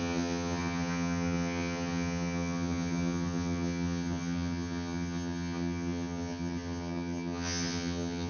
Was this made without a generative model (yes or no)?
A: no